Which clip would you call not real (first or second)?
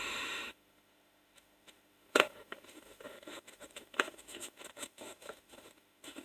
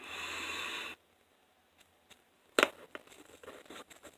first